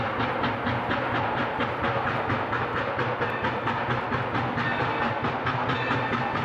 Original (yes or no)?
yes